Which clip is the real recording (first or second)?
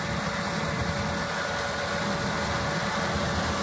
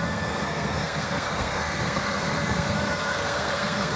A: first